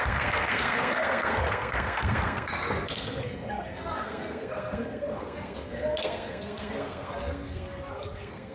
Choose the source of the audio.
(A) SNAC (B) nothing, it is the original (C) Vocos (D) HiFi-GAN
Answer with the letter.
A